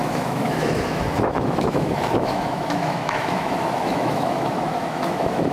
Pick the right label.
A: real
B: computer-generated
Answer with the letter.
B